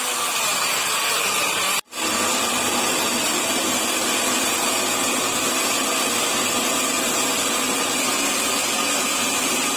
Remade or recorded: recorded